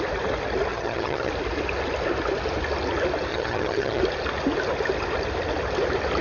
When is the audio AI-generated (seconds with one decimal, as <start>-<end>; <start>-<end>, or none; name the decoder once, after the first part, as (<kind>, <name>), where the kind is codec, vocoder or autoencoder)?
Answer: 0.7-1.3 (vocoder, HiFi-GAN); 3.3-4.0